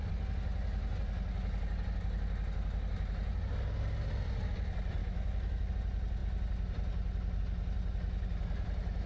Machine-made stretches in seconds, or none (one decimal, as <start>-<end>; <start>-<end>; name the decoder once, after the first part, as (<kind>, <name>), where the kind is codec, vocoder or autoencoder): 5.0-5.7 (autoencoder, DAC-VAE)